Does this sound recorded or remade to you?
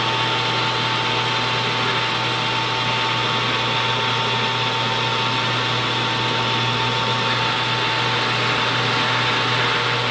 recorded